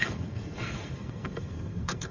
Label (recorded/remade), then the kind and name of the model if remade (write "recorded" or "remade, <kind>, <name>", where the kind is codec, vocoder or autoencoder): remade, codec, SNAC